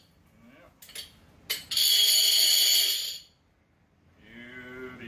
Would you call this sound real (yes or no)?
yes